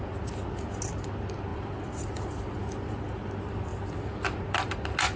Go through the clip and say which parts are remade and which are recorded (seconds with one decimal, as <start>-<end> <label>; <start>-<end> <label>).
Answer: 0.0-1.5 recorded; 1.5-3.3 remade; 3.3-5.2 recorded